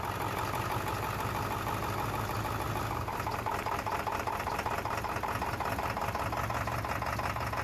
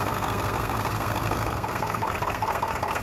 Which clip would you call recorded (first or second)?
first